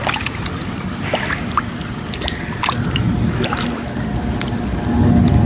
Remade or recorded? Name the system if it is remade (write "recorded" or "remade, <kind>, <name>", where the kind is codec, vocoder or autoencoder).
recorded